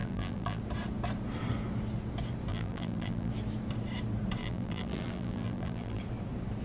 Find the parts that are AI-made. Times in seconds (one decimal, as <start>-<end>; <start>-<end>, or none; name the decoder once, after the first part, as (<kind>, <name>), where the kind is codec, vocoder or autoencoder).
0.0-0.6 (vocoder, BigVGAN v2); 2.5-3.3; 4.4-6.0